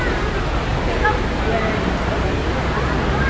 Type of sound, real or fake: real